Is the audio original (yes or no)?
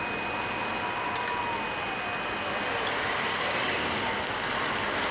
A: yes